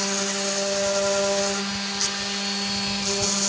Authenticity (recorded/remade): recorded